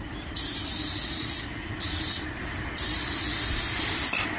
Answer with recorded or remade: recorded